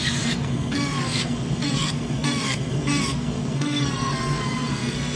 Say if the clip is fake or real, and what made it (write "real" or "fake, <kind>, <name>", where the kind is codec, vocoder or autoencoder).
fake, codec, SNAC